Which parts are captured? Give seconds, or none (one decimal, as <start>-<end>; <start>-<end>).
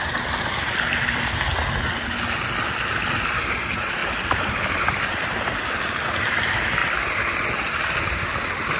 0.0-8.8